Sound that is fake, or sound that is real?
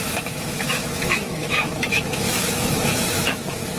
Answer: fake